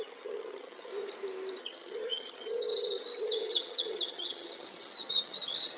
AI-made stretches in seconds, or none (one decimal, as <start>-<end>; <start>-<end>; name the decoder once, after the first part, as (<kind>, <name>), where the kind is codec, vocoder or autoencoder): 0.0-0.9 (vocoder, HiFi-GAN); 1.6-5.8